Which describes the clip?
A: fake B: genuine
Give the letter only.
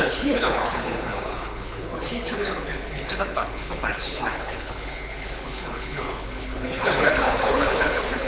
A